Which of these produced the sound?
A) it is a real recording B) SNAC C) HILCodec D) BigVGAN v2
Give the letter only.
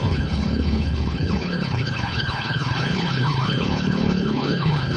C